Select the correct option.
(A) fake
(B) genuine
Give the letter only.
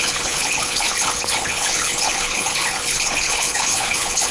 A